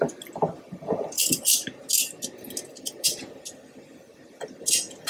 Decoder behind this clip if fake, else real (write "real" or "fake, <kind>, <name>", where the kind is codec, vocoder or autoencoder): real